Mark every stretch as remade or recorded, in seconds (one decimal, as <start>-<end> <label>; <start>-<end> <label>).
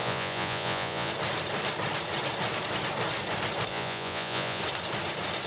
0.0-1.1 remade; 1.1-3.7 recorded; 3.7-4.6 remade; 4.6-5.5 recorded